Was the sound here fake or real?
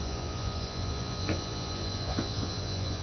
fake